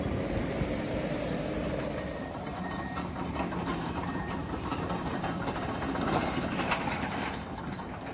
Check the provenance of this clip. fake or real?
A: fake